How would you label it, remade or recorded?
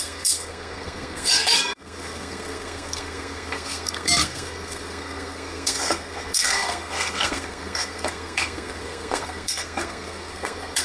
remade